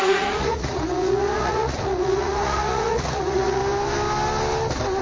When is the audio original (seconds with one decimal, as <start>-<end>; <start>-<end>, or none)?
3.6-5.0